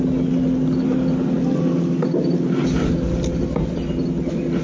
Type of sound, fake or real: real